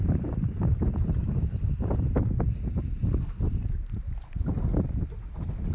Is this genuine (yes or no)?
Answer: yes